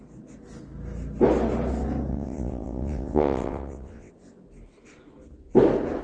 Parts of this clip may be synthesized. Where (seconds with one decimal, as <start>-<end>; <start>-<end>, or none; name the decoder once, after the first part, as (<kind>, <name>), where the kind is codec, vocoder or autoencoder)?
2.1-4.1 (vocoder, WaveNeXt)

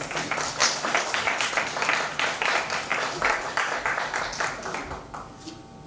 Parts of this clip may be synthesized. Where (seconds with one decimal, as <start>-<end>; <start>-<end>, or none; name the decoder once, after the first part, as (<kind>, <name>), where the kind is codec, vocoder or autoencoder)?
0.6-1.5 (codec, DAC); 2.9-4.2

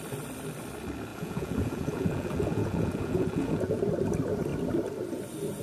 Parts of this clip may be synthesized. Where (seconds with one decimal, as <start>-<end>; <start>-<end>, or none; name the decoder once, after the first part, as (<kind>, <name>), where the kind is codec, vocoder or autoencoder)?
1.1-3.8 (vocoder, Vocos)

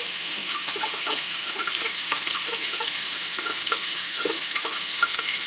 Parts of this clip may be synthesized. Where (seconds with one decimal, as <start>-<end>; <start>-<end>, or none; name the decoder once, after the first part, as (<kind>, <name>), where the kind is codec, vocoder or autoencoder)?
0.0-5.5 (autoencoder, DAC-VAE)

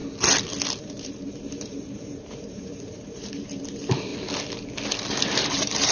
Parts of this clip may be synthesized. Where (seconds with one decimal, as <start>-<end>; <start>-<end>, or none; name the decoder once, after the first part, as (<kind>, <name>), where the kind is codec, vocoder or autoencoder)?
0.8-4.1 (vocoder, BigVGAN v2); 5.3-5.9

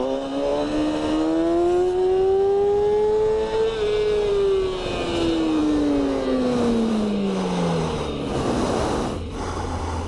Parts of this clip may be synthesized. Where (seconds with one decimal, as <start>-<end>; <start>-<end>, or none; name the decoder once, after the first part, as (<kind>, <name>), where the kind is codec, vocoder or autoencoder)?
none

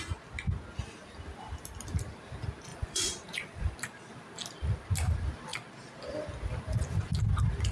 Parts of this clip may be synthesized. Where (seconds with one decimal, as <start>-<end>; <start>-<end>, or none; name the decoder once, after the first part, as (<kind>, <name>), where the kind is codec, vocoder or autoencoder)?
2.7-3.7 (vocoder, Vocos)